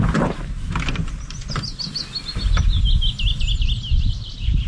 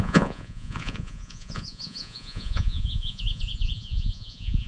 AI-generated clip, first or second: second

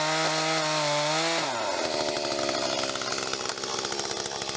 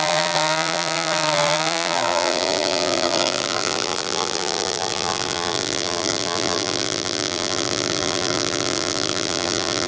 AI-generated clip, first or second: second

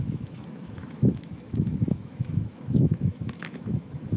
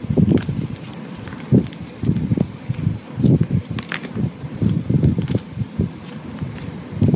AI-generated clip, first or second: first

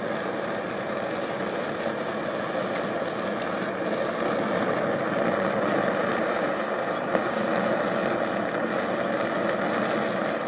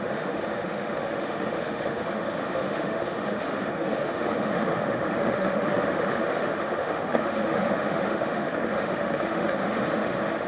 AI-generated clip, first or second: second